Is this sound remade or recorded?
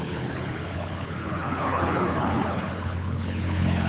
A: remade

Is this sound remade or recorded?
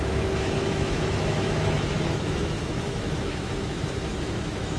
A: remade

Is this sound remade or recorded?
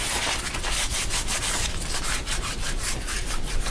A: recorded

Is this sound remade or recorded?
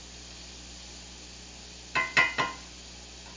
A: recorded